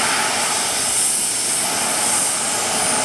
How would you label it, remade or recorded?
recorded